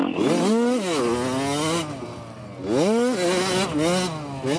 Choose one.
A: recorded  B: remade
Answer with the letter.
A